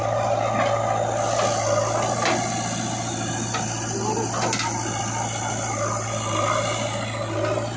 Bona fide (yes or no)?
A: yes